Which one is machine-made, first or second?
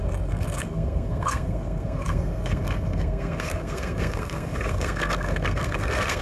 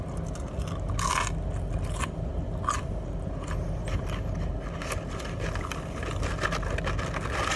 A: first